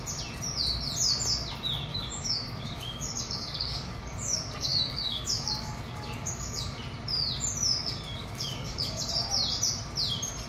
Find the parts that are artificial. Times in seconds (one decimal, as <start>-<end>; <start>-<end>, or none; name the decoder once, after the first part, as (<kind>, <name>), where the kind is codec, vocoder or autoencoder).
1.9-6.8 (codec, DAC); 7.8-9.1